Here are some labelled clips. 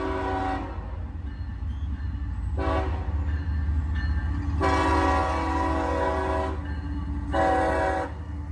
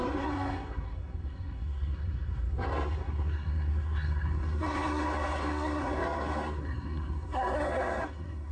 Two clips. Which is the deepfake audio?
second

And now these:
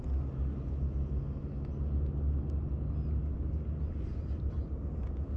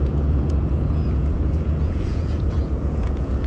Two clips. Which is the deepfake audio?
second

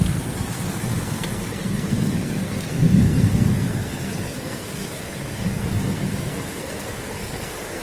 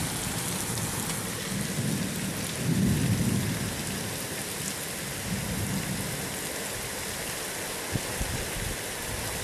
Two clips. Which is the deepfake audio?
first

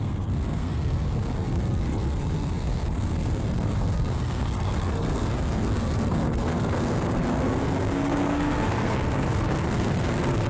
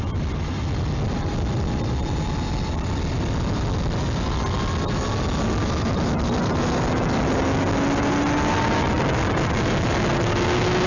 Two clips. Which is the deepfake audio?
first